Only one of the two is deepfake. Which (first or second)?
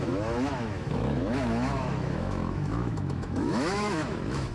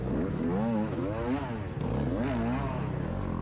first